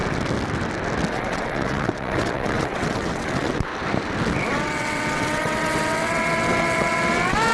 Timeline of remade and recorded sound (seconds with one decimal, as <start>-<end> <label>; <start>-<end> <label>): 0.0-1.1 recorded; 1.1-3.7 remade; 3.7-4.5 recorded; 4.5-7.5 remade